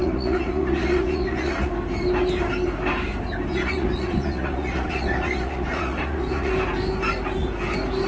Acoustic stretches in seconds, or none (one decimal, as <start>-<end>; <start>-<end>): 1.7-3.5; 6.5-8.1